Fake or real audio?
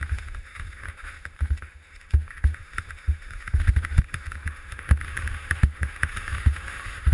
fake